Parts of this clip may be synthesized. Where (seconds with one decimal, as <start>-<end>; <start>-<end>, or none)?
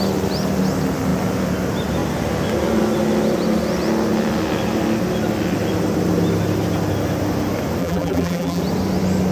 7.8-8.6